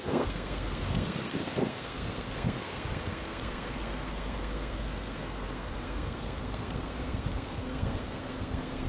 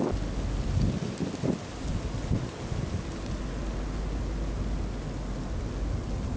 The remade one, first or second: first